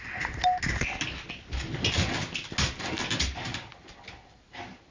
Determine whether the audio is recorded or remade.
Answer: recorded